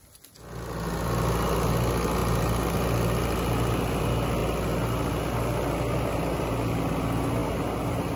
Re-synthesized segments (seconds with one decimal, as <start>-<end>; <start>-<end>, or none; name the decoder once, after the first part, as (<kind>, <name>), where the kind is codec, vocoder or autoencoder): none